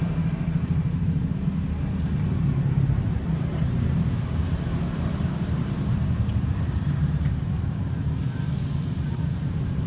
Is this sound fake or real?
fake